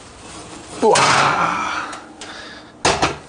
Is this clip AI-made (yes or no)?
no